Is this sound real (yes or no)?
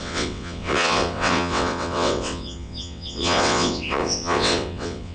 no